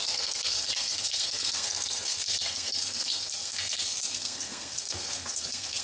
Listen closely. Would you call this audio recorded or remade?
remade